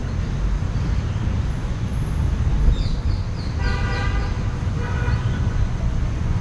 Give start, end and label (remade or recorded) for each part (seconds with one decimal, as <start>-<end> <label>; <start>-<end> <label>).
0.0-1.3 recorded; 1.3-1.9 remade; 1.9-4.4 recorded; 4.4-6.4 remade